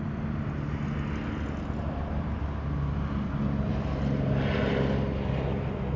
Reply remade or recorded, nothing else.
recorded